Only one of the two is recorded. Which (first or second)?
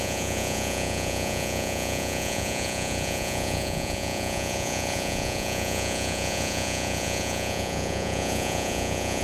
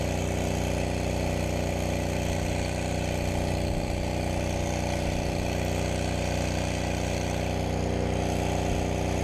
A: second